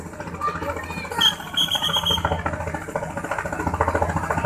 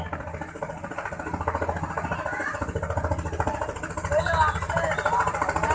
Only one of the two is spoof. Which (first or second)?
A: second